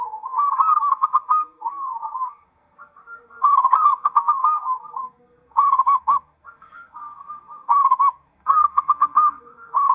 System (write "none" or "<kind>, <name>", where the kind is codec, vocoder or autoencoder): codec, SNAC